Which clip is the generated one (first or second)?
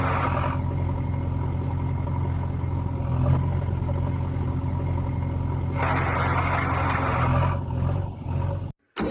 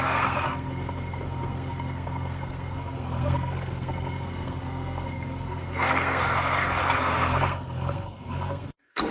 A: second